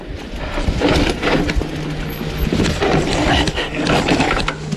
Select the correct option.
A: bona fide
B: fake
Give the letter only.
A